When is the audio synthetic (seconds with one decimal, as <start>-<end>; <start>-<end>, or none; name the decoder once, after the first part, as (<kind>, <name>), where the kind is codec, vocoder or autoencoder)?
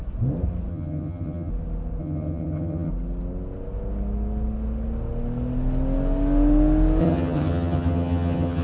0.7-1.5 (vocoder, HiFi-GAN); 2.0-2.9; 7.0-8.6